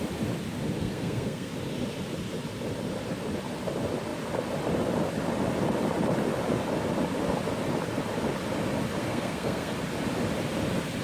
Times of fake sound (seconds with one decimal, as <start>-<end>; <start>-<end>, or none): 0.8-1.5; 9.0-9.7